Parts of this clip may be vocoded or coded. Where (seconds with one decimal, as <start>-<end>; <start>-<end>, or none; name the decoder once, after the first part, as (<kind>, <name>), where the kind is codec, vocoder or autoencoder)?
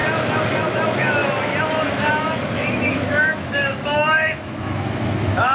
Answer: 0.7-1.2 (autoencoder, DAC-VAE); 2.1-5.5